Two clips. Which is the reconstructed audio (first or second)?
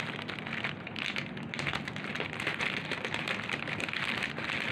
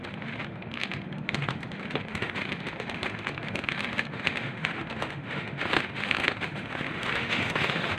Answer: second